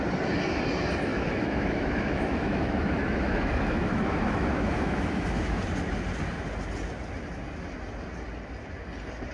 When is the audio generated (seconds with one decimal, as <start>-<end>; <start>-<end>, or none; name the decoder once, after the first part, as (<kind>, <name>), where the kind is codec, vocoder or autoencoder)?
1.1-5.6 (autoencoder, DAC-VAE)